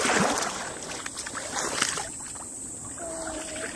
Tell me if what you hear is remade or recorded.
recorded